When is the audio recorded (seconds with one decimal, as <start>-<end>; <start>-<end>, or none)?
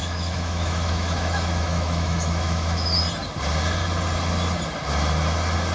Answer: 3.0-5.7